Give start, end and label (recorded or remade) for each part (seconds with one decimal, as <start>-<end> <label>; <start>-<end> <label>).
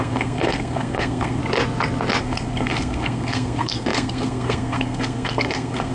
0.0-1.4 remade; 1.4-2.2 recorded; 2.2-5.9 remade